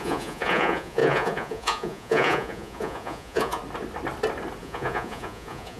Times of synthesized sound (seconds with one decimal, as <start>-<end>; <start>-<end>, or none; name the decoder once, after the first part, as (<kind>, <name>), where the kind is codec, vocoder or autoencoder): 0.0-3.6 (vocoder, Vocos); 4.6-5.8